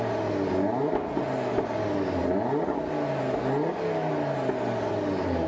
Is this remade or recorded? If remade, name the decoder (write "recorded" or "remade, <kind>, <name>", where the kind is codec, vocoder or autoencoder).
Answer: recorded